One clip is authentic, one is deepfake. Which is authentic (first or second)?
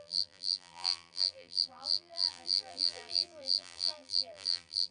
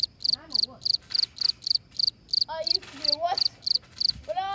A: second